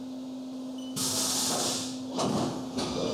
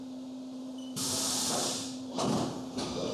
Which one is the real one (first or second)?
first